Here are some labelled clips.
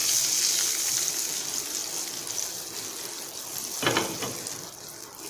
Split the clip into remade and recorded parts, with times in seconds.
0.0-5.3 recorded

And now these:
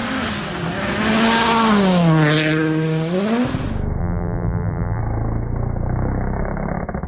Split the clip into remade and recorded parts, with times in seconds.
0.0-4.0 recorded; 4.0-5.0 remade; 5.0-7.1 recorded

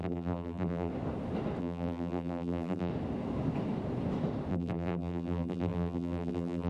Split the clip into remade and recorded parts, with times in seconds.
0.0-0.9 remade; 0.9-1.6 recorded; 1.6-2.9 remade; 2.9-4.5 recorded; 4.5-6.7 remade

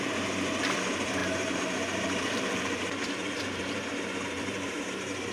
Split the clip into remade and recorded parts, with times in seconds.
0.0-5.3 remade